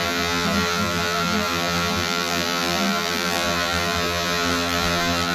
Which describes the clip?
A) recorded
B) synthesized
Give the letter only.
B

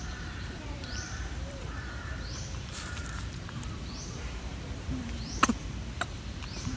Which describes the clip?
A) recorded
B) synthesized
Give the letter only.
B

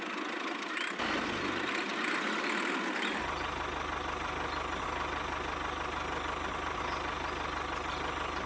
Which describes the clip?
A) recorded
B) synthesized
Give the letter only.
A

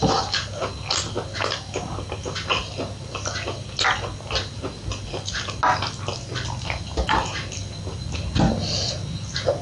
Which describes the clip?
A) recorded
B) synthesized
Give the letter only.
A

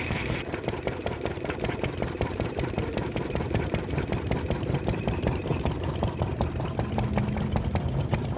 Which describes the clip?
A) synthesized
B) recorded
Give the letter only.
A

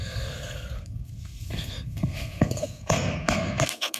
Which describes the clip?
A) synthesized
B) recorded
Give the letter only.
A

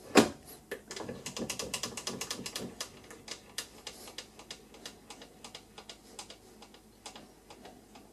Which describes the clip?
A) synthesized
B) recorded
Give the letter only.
B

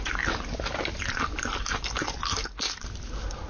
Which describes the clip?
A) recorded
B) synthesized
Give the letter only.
A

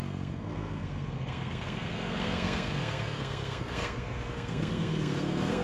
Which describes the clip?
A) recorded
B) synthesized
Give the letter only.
B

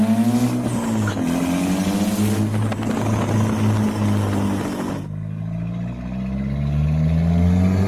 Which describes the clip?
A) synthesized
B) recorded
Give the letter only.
B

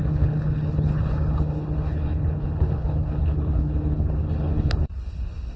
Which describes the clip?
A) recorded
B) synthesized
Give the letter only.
B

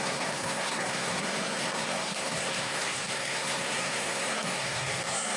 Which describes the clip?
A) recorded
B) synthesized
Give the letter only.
B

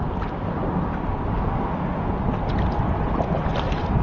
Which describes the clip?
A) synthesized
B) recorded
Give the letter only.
B